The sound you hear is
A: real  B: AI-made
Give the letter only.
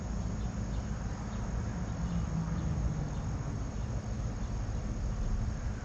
A